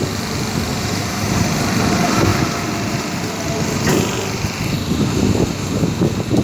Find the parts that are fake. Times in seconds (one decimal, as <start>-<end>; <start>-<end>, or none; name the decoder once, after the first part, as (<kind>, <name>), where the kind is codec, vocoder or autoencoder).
0.7-1.4 (vocoder, BigVGAN v2)